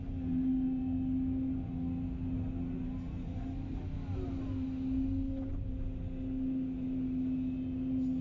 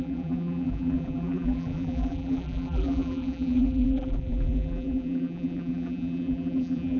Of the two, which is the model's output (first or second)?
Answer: second